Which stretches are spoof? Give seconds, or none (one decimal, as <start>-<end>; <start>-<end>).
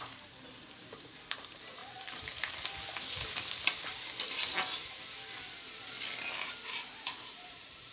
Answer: 0.0-1.8; 6.5-7.9